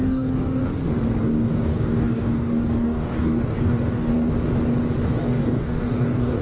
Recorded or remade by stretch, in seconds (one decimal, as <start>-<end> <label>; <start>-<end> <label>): 0.0-0.6 remade; 0.6-1.2 recorded; 1.2-4.1 remade; 4.1-5.1 recorded; 5.1-6.4 remade